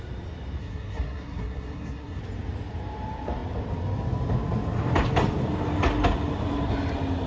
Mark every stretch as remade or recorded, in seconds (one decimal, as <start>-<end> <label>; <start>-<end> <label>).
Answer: 0.0-0.6 recorded; 0.6-2.2 remade; 2.2-7.3 recorded